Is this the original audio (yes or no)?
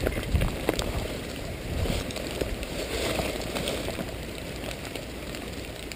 no